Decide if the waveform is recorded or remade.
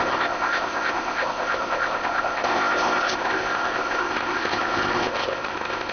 remade